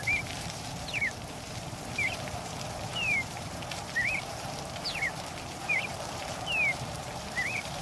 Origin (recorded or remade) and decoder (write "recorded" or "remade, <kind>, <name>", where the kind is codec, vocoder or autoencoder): remade, vocoder, BigVGAN v2